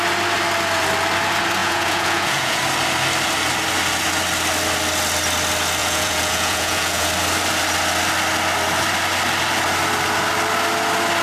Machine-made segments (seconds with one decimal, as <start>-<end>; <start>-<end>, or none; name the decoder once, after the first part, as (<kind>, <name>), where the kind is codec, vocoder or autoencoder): 1.6-2.6 (vocoder, Vocos); 5.8-7.1